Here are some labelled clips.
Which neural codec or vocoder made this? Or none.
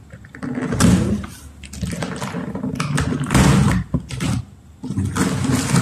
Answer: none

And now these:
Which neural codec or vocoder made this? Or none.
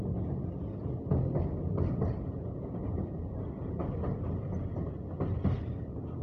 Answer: none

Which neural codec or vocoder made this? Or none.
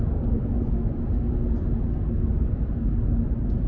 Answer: none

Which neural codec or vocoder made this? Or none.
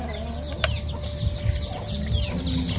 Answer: none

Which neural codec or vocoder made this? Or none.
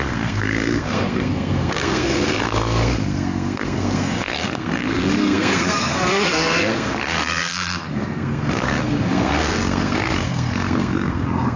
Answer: codec, SNAC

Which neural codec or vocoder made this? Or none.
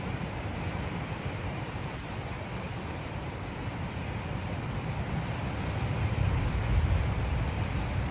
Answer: vocoder, BigVGAN v2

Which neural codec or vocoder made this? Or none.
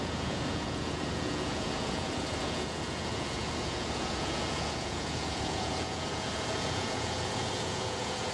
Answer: vocoder, Vocos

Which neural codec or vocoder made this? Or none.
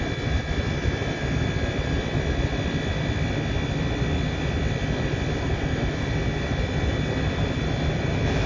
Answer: none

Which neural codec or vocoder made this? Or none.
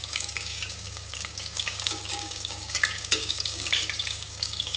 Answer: codec, DAC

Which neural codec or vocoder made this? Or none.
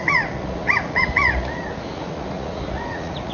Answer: vocoder, Vocos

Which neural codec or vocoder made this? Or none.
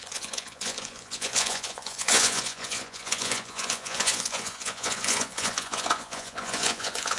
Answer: vocoder, Vocos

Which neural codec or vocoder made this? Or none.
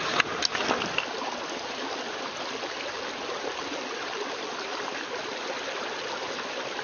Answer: none